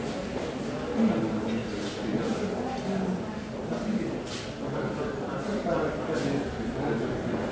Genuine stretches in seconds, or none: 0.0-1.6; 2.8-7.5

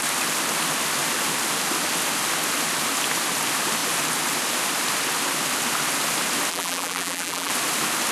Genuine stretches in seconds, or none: 0.0-6.5; 7.5-8.1

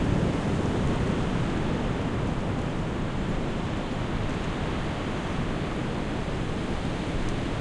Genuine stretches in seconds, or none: 0.0-2.7; 4.0-5.8; 6.6-7.6

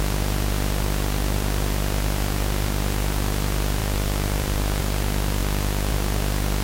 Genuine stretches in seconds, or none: 0.0-3.8; 4.8-6.6

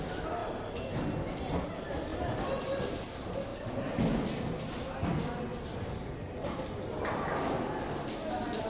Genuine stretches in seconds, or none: 0.0-8.7

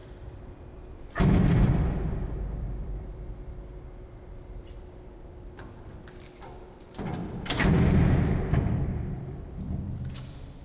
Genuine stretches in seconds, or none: 7.2-8.7

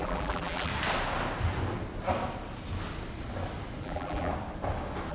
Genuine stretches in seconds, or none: 0.7-3.8; 4.3-5.1